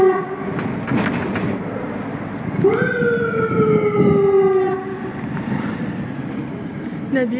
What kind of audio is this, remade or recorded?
recorded